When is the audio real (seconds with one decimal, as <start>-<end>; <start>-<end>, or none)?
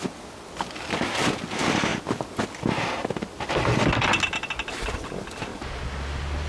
0.0-6.5